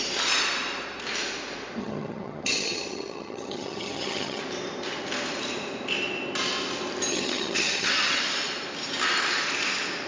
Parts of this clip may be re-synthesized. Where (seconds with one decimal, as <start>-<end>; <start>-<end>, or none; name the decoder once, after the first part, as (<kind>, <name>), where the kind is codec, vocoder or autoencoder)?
1.8-4.4 (vocoder, HiFi-GAN); 7.1-8.2